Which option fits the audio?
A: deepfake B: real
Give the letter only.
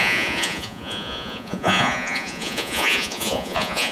A